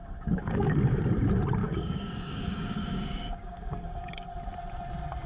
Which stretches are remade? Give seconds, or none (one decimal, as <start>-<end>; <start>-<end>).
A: 0.0-0.8; 1.6-4.3